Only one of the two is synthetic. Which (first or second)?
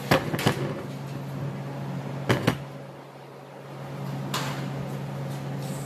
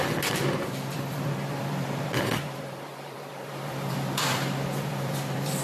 second